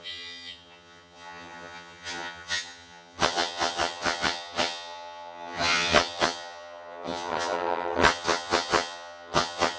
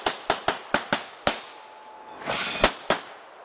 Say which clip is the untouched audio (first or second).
second